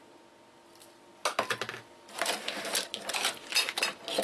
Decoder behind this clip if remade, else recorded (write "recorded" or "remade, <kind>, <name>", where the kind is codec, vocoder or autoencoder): recorded